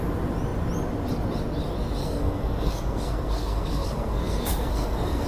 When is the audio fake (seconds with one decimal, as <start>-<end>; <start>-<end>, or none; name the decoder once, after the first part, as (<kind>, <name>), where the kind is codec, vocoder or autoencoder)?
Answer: 2.0-5.3 (codec, SNAC)